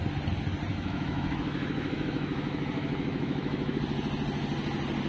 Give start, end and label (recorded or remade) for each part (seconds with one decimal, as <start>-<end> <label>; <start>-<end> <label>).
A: 0.0-0.7 recorded; 0.7-3.8 remade; 3.8-5.1 recorded